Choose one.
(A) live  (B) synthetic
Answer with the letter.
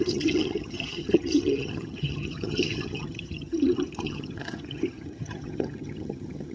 B